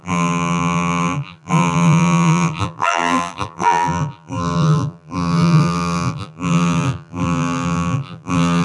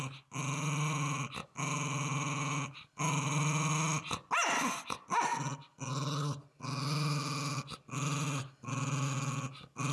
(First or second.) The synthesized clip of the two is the first